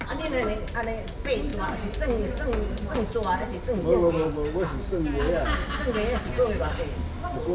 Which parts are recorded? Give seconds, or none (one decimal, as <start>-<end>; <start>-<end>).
0.0-7.5